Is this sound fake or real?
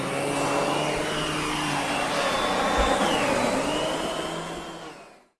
real